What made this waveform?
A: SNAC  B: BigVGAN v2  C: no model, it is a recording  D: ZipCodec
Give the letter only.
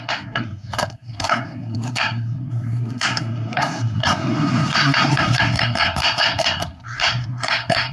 A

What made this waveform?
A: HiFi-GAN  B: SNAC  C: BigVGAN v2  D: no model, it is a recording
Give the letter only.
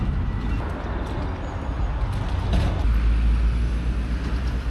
D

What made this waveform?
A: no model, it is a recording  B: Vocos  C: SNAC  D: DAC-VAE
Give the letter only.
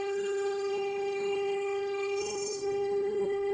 C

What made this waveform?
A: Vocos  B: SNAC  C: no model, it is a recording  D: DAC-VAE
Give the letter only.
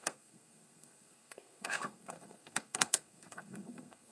B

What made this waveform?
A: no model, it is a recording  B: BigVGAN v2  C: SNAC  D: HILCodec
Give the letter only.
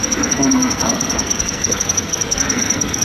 C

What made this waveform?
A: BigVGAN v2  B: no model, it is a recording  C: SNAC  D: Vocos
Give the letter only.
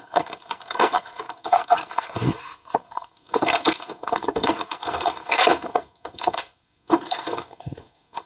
C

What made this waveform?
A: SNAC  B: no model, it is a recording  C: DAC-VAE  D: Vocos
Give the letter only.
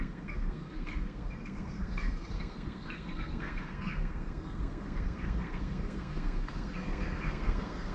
A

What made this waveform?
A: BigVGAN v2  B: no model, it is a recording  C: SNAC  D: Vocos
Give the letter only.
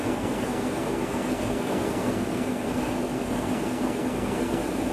C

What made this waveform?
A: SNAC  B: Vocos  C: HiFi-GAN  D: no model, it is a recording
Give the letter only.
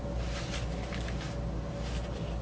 D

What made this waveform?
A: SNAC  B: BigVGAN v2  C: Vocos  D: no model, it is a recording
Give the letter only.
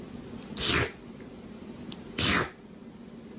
D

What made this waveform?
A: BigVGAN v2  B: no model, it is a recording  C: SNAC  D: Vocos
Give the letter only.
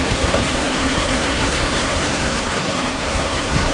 C